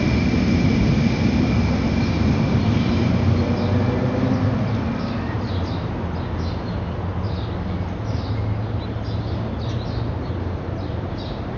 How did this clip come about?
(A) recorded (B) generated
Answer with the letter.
A